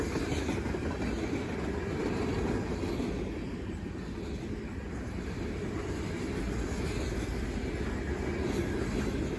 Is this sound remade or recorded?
recorded